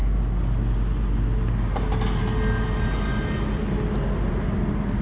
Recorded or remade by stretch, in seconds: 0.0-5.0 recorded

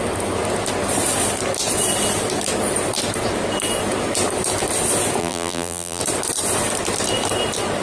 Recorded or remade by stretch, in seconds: 0.0-5.2 recorded; 5.2-6.0 remade; 6.0-7.8 recorded

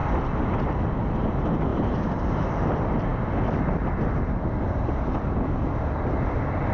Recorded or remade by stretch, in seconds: 0.0-1.7 recorded; 1.7-2.7 remade; 2.7-6.7 recorded

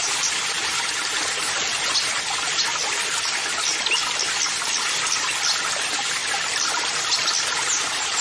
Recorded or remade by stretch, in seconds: 0.0-2.7 recorded; 2.7-3.2 remade; 3.2-6.2 recorded; 6.2-7.3 remade; 7.3-8.2 recorded

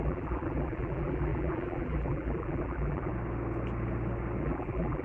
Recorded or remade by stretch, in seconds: 0.0-3.1 remade; 3.1-4.4 recorded; 4.4-5.0 remade

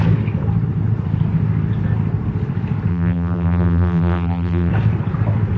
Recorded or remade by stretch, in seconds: 0.0-2.9 recorded; 2.9-4.7 remade; 4.7-5.6 recorded